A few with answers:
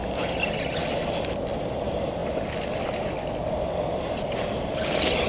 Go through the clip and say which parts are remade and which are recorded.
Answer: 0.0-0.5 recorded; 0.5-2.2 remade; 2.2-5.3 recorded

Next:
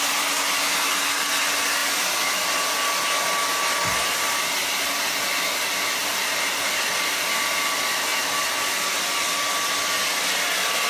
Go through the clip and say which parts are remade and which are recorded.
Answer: 0.0-6.0 recorded; 6.0-6.5 remade; 6.5-10.9 recorded

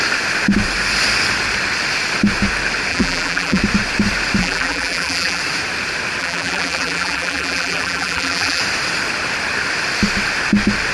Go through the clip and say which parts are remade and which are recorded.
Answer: 0.0-2.9 recorded; 2.9-3.6 remade; 3.6-4.4 recorded; 4.4-5.4 remade; 5.4-6.2 recorded; 6.2-8.6 remade; 8.6-10.9 recorded